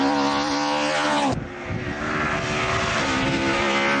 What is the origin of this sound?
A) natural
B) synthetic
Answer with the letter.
A